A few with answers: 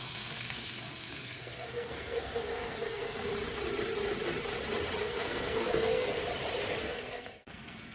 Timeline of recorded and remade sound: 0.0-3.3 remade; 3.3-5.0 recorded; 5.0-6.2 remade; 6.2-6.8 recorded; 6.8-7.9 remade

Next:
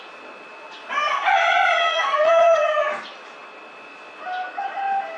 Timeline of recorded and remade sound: 0.0-1.2 recorded; 1.2-2.9 remade; 2.9-5.2 recorded

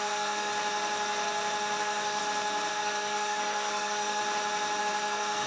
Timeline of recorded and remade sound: 0.0-0.5 remade; 0.5-1.8 recorded; 1.8-2.2 remade; 2.2-2.7 recorded; 2.7-4.2 remade; 4.2-4.8 recorded; 4.8-5.5 remade